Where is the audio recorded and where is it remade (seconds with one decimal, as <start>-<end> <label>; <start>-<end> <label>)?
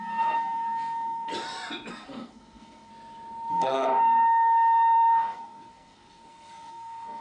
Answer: 0.0-1.3 remade; 1.3-1.9 recorded; 1.9-2.9 remade; 2.9-3.5 recorded; 3.5-7.2 remade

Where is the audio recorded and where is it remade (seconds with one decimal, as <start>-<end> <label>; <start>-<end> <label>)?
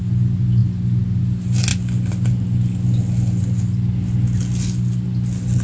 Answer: 0.0-5.6 recorded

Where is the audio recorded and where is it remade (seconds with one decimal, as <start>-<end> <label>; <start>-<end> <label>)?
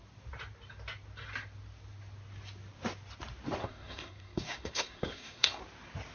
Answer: 0.0-3.6 recorded; 3.6-5.6 remade; 5.6-6.1 recorded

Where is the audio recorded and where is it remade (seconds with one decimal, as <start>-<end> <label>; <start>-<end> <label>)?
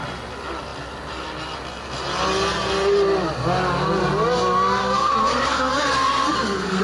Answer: 0.0-4.8 recorded; 4.8-6.8 remade